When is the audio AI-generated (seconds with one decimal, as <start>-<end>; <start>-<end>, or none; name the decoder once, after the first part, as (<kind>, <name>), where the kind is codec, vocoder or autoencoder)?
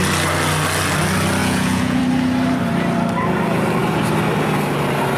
1.4-2.0 (vocoder, Vocos)